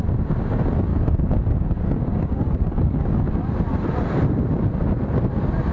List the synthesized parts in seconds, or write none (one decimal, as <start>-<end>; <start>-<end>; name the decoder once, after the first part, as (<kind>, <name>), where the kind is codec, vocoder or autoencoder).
0.9-3.3 (codec, DAC)